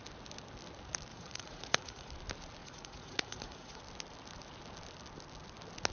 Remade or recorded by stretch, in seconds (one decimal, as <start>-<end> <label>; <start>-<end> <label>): 0.0-1.1 recorded; 1.1-2.1 remade; 2.1-2.6 recorded; 2.6-3.8 remade; 3.8-5.9 recorded